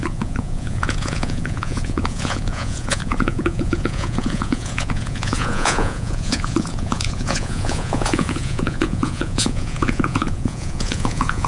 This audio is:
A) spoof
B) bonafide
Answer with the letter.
A